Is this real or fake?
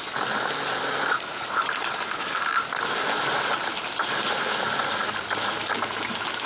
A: real